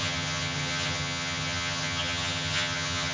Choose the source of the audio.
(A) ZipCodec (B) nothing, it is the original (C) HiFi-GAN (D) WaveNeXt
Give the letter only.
C